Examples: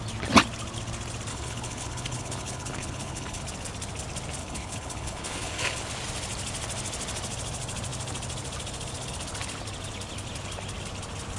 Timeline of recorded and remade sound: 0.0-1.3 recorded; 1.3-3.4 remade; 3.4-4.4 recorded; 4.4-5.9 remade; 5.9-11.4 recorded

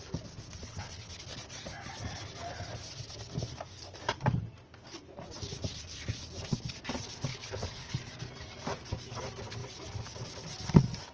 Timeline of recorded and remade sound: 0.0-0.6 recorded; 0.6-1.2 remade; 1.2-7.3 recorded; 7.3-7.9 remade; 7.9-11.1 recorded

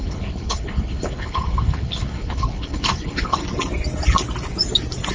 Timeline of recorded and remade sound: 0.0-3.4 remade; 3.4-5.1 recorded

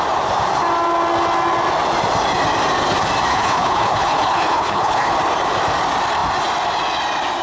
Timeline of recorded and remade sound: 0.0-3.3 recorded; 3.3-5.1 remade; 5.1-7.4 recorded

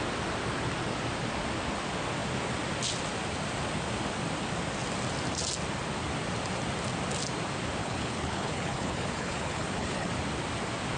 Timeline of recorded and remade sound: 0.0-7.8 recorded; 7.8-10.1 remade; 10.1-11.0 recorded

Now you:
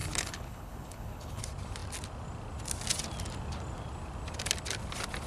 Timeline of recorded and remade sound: 0.0-1.4 remade; 1.4-5.3 recorded

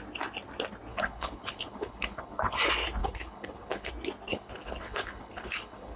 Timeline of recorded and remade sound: 0.0-0.9 recorded; 0.9-2.6 remade; 2.6-3.0 recorded; 3.0-3.9 remade; 3.9-4.3 recorded; 4.3-6.0 remade